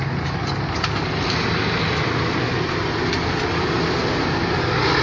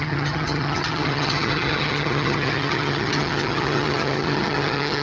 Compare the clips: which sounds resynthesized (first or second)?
second